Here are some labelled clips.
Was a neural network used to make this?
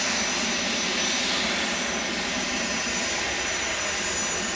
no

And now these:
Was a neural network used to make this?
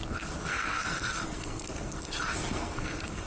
yes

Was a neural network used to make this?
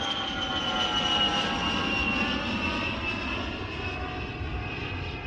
no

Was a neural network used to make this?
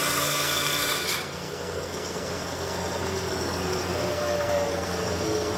yes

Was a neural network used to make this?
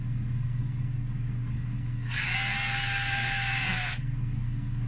yes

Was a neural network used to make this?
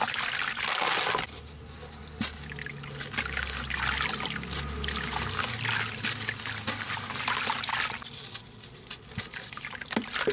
no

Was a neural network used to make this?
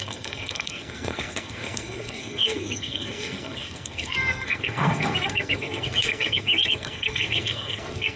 yes